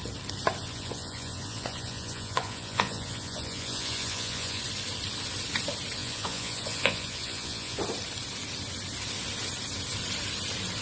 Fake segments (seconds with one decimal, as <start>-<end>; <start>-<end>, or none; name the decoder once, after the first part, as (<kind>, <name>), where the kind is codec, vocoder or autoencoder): 0.6-4.6 (vocoder, Vocos); 6.0-7.8